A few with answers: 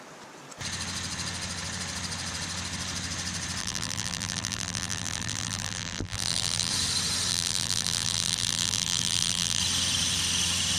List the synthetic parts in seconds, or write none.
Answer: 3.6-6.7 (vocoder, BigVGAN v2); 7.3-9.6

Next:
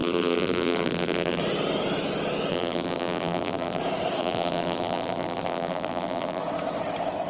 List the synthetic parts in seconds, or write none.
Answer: 0.0-1.4 (vocoder, BigVGAN v2); 2.5-3.8; 4.2-6.4

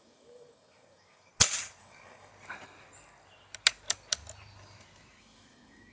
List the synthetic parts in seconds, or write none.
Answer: 0.0-1.3 (codec, DAC); 1.8-2.3; 5.2-5.9

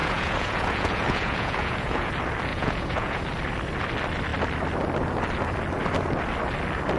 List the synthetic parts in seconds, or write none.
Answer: 0.0-2.1 (vocoder, Vocos); 2.5-3.2